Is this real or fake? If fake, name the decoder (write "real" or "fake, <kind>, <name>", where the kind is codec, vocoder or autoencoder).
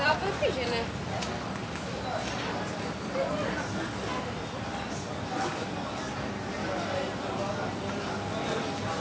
real